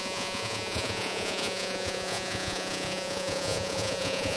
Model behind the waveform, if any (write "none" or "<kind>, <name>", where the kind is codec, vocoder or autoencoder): vocoder, Vocos